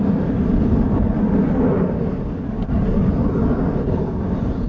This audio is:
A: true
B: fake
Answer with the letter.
A